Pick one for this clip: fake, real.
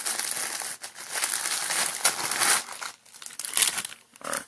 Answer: real